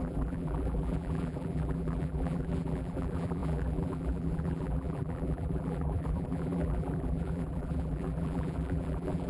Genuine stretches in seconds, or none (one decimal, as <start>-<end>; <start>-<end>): none